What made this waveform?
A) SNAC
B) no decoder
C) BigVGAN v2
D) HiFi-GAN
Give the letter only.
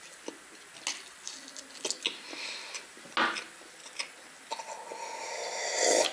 B